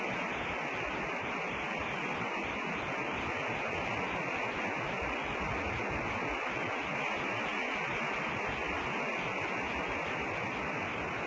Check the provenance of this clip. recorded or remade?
recorded